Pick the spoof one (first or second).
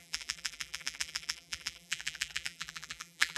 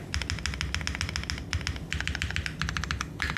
first